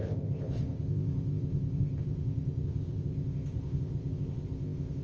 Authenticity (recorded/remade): remade